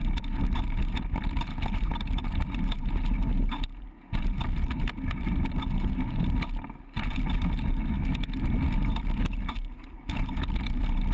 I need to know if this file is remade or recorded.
recorded